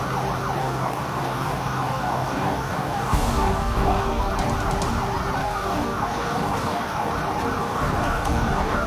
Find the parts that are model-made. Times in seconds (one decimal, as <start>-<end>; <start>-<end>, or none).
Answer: 0.6-4.3; 5.4-7.1; 7.6-8.9